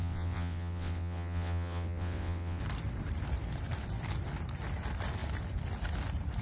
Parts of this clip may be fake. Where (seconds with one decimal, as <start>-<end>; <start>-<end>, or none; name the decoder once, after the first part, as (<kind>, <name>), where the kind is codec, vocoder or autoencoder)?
0.0-2.6 (vocoder, WaveNeXt)